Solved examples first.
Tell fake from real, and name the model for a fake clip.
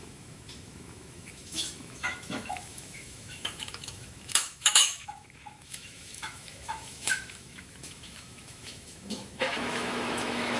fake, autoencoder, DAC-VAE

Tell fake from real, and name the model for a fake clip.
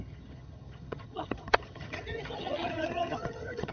fake, vocoder, HiFi-GAN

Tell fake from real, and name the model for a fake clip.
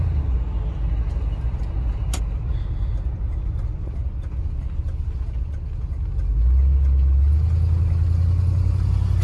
real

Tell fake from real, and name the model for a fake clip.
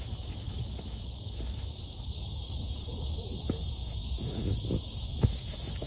fake, autoencoder, DAC-VAE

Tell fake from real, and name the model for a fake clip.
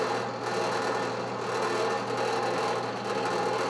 real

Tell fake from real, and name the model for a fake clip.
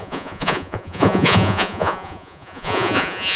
fake, vocoder, Vocos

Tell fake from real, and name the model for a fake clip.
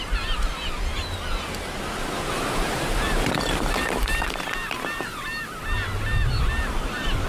real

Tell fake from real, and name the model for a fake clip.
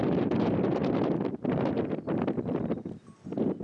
fake, vocoder, BigVGAN v2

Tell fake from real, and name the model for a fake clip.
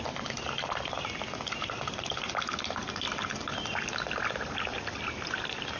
real